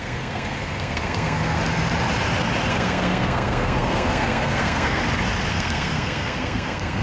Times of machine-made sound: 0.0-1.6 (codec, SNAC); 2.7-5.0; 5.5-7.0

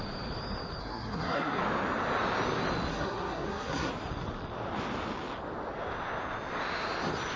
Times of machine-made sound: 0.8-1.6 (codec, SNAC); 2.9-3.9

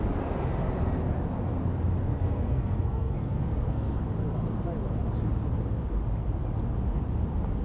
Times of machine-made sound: 2.1-4.0 (codec, SNAC)